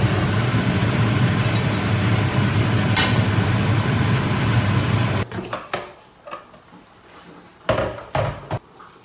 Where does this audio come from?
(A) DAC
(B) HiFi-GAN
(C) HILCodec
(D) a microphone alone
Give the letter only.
D